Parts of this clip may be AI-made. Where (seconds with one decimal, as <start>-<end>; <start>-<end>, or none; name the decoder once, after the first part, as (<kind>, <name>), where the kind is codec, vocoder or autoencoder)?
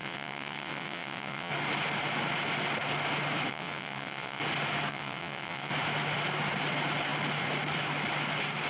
0.0-1.5 (vocoder, WaveNeXt); 3.5-4.4; 4.9-5.7